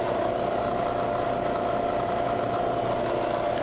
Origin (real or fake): real